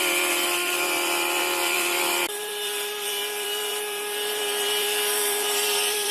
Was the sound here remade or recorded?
remade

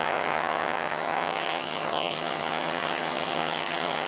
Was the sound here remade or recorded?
remade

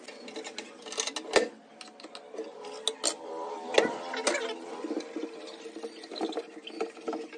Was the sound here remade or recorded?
recorded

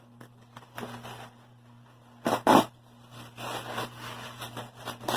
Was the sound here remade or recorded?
recorded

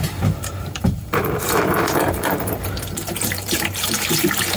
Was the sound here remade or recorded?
remade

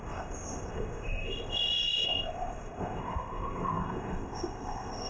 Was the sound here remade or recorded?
remade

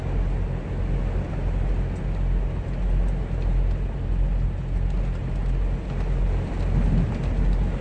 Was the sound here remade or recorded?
recorded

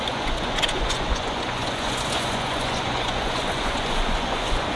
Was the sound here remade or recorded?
remade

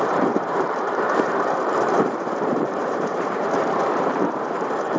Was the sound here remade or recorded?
remade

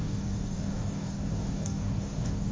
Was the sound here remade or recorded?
remade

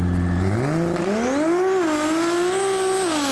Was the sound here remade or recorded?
recorded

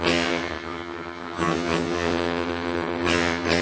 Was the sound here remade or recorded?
remade